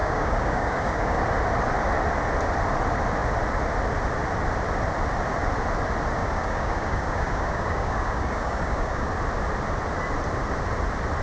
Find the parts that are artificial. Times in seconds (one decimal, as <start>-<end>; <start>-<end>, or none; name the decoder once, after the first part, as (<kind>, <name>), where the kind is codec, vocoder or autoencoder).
0.0-1.2 (codec, DAC); 6.2-9.1